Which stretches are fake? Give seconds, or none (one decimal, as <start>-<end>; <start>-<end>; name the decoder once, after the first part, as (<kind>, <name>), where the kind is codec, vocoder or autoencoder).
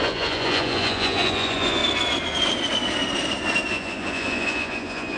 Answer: 0.0-1.8 (vocoder, Vocos); 3.7-5.2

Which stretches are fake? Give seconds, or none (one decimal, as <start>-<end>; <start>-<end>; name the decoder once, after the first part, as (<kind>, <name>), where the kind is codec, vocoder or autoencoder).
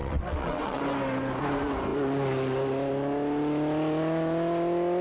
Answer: 0.0-0.8 (vocoder, WaveNeXt)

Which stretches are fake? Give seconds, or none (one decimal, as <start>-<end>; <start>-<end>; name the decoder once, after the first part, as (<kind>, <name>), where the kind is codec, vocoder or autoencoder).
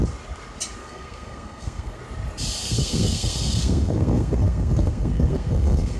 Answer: 0.8-2.0 (codec, SNAC); 2.6-6.0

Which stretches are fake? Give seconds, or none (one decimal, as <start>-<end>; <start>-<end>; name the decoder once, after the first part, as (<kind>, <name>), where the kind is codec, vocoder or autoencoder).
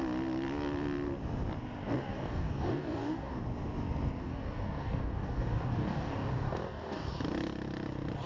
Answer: 2.1-3.4 (codec, DAC); 4.2-7.1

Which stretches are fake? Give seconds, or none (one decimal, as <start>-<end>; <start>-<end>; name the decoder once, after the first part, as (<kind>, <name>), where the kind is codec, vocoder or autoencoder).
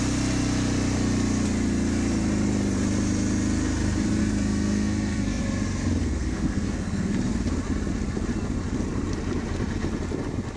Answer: 4.2-5.4 (codec, SNAC); 6.0-7.1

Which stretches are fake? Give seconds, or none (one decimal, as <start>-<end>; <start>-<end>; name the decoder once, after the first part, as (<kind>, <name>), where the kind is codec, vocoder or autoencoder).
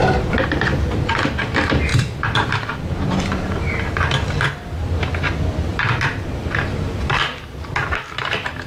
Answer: 0.0-1.1 (vocoder, BigVGAN v2); 1.9-3.9; 5.7-7.0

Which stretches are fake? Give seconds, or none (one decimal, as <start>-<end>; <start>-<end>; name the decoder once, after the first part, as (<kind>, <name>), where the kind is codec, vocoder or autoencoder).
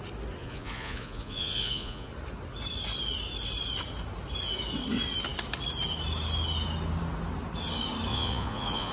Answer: 0.4-2.1 (vocoder, Vocos); 8.1-8.9